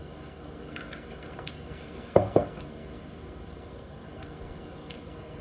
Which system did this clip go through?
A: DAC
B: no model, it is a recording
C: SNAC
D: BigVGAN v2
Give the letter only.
C